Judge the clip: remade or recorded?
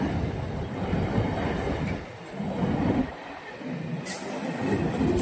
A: recorded